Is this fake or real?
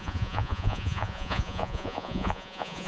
fake